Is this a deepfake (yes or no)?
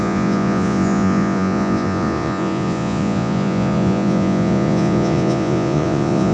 yes